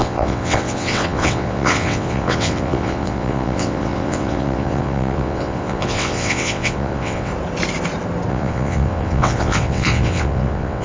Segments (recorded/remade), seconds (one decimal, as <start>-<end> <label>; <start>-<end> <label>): 0.0-7.3 remade; 7.3-8.3 recorded; 8.3-10.8 remade